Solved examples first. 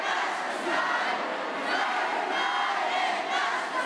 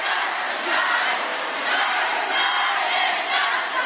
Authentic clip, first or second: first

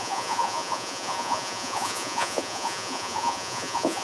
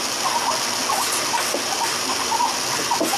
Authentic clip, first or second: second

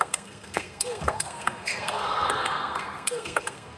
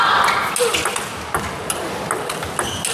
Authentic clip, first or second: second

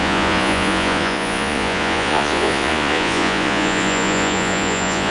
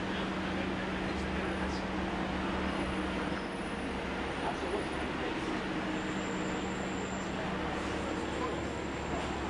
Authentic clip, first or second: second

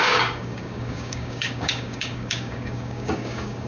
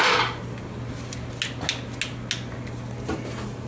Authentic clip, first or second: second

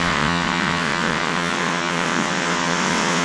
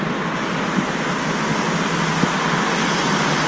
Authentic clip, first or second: second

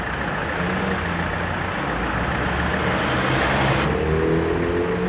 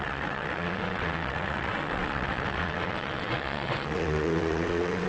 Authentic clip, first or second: first